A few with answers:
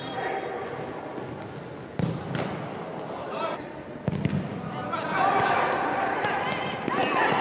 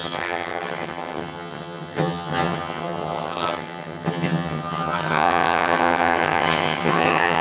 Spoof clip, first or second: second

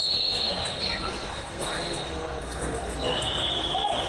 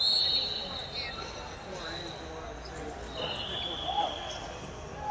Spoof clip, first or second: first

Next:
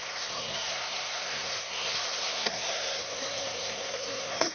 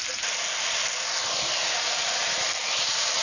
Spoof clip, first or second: first